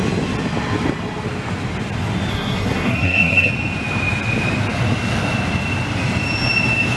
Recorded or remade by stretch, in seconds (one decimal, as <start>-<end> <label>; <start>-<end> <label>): 0.0-2.3 recorded; 2.3-3.5 remade; 3.5-7.0 recorded

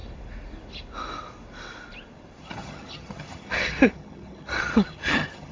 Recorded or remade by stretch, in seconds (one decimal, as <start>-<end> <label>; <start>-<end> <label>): 0.0-2.4 recorded; 2.4-5.5 remade